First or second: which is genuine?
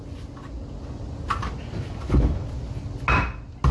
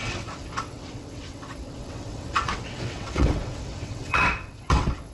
first